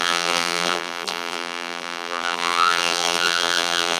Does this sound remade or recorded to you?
remade